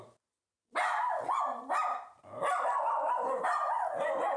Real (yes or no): yes